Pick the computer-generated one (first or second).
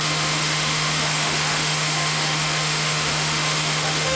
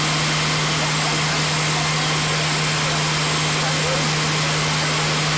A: first